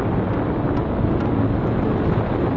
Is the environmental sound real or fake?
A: real